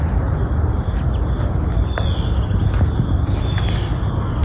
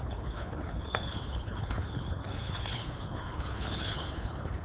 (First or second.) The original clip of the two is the first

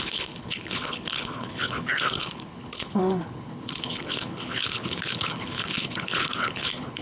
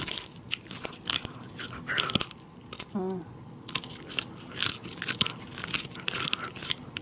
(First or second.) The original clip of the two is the second